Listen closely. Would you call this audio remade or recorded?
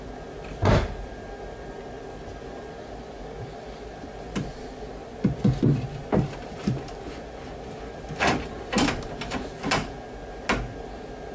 recorded